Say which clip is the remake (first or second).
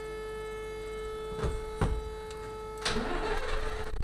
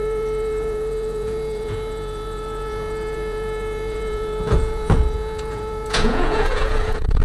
second